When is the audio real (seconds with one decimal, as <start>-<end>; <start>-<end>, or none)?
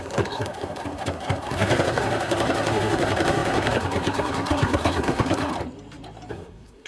5.5-6.3